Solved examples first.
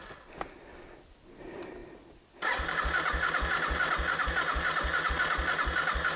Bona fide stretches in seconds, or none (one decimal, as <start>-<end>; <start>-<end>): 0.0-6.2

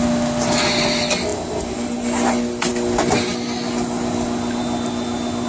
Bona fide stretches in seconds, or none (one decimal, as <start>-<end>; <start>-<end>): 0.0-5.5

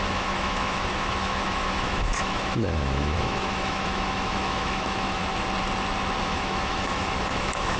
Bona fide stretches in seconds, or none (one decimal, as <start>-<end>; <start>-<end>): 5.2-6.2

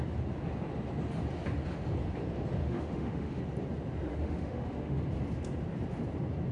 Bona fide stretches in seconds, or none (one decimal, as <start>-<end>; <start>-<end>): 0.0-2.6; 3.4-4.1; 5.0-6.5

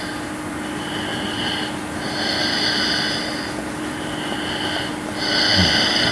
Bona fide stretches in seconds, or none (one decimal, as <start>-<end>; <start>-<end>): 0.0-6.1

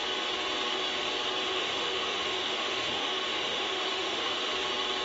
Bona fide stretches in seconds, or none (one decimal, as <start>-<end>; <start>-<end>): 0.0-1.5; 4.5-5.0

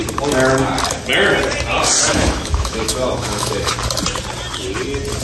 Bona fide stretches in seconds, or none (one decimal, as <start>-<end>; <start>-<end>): 0.0-2.1; 3.7-5.2